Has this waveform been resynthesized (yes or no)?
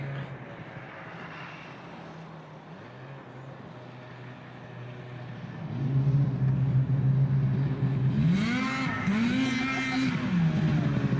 no